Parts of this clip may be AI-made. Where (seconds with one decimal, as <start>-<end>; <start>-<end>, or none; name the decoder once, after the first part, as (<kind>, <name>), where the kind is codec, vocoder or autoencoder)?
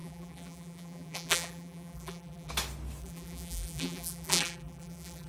0.0-2.5 (vocoder, BigVGAN v2); 3.0-5.3